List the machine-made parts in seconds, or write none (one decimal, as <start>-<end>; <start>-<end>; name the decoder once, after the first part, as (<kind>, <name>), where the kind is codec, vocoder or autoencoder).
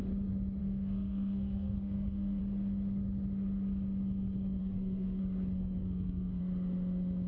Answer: 0.6-2.4 (codec, SNAC); 4.6-5.2; 5.8-6.4